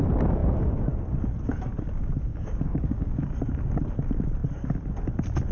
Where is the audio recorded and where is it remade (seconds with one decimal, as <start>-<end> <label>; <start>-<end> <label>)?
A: 0.0-2.3 recorded; 2.3-3.3 remade; 3.3-5.5 recorded